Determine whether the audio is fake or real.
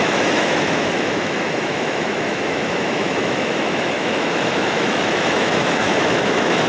fake